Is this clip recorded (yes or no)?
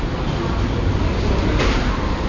yes